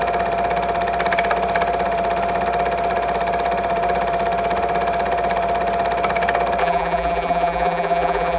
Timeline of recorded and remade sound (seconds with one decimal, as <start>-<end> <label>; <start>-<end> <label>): 0.0-6.6 recorded; 6.6-8.4 remade